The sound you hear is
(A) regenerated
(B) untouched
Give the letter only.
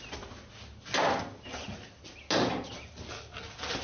B